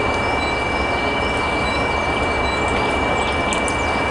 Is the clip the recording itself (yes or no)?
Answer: yes